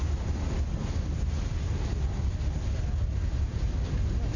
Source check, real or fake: real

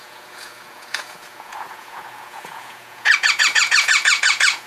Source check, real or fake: fake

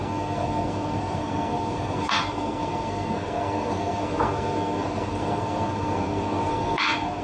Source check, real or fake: fake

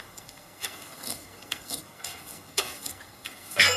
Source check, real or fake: fake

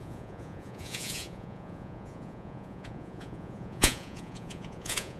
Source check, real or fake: fake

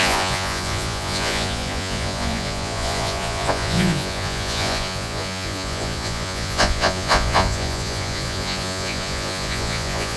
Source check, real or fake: fake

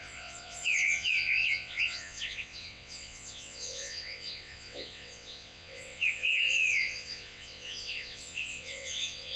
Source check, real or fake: fake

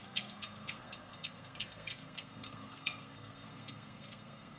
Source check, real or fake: fake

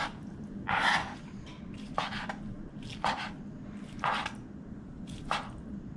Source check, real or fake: real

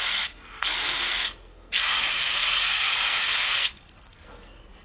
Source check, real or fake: fake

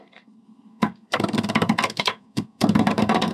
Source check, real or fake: fake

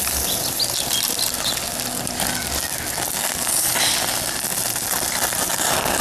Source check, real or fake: real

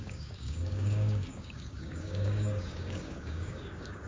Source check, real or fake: fake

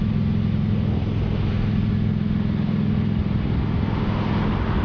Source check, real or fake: real